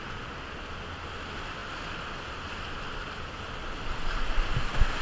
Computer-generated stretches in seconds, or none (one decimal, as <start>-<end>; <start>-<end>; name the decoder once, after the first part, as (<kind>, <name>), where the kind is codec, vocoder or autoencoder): none